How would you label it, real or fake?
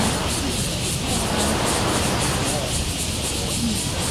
real